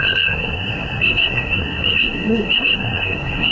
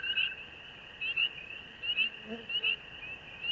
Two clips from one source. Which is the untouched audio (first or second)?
second